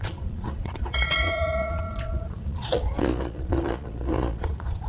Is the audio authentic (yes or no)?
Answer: no